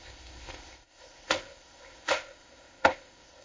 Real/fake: fake